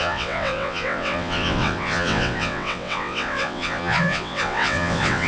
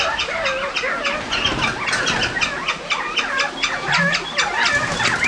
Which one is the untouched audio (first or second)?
second